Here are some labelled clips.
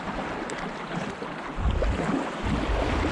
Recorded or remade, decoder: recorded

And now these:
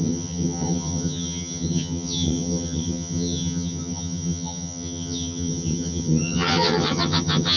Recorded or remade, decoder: remade, vocoder, HiFi-GAN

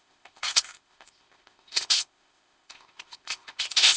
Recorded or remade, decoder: remade, codec, ZipCodec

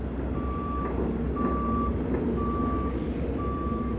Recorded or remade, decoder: recorded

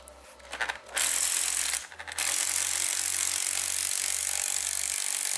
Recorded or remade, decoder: recorded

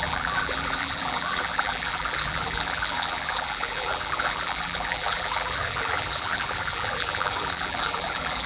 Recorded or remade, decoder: remade, vocoder, BigVGAN v2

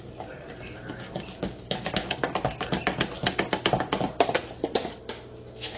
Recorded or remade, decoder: recorded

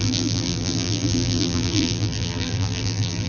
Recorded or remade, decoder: remade, vocoder, BigVGAN v2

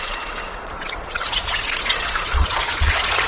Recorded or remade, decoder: remade, vocoder, Vocos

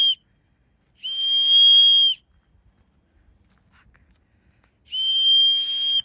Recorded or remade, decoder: recorded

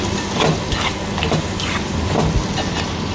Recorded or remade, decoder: recorded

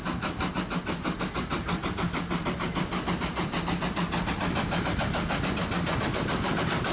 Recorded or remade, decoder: recorded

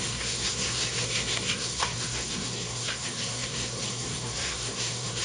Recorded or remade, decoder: remade, codec, SNAC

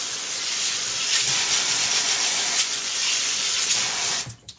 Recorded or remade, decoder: remade, vocoder, Vocos